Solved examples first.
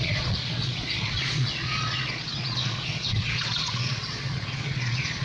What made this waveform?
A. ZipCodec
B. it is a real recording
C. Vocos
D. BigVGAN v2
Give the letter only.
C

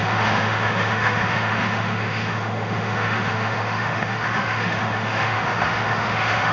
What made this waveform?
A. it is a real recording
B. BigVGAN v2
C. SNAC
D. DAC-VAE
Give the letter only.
D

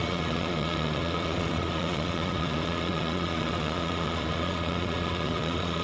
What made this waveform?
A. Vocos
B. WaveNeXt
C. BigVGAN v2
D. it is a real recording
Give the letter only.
A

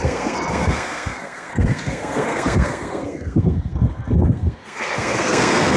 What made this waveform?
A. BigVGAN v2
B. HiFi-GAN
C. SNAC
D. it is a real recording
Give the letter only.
C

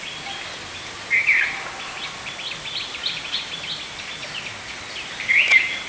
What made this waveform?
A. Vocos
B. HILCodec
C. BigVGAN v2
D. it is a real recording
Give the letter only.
D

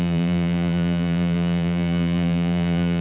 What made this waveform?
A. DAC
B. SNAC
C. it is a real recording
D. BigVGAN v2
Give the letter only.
D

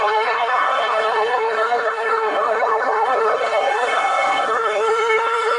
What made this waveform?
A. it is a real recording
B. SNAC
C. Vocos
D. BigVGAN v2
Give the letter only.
B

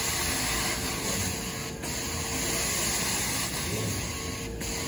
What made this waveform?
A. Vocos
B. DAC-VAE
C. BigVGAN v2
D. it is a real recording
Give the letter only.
D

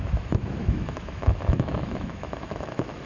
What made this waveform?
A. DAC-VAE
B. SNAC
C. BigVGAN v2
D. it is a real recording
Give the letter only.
A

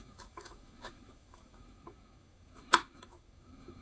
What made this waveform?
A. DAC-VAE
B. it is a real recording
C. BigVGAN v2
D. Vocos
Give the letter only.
A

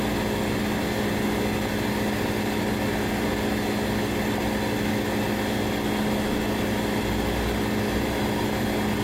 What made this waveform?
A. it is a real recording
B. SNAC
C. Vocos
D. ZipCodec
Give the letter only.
A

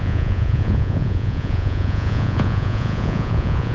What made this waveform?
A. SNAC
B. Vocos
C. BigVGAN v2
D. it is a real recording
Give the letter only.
B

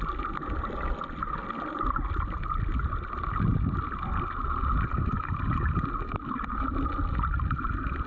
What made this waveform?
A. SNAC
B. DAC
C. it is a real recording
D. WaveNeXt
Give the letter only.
C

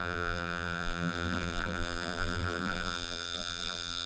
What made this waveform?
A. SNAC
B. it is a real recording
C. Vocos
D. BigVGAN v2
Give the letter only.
D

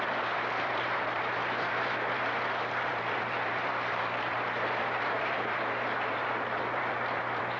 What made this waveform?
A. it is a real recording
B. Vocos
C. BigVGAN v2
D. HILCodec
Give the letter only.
C